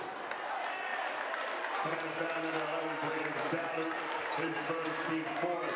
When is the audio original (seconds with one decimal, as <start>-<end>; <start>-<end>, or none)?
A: 0.0-0.9; 1.9-3.0; 5.1-5.8